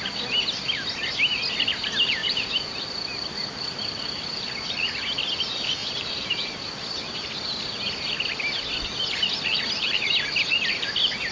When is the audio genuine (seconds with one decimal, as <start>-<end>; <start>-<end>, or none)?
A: 0.0-2.2; 2.8-5.8; 6.7-11.3